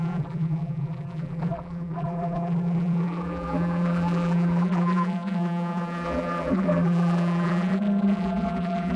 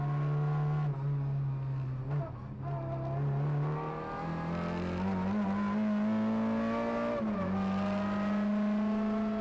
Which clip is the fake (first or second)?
first